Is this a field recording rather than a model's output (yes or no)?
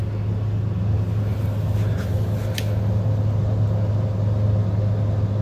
yes